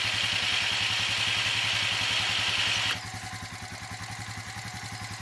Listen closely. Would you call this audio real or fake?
real